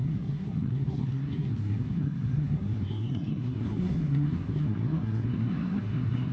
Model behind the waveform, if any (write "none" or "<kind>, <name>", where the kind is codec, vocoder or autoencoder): codec, SNAC